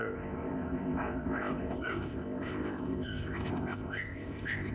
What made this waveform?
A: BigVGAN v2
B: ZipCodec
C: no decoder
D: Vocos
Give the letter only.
B